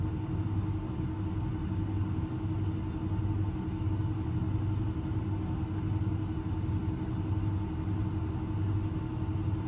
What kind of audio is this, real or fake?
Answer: real